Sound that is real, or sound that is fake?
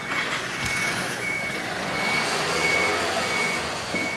fake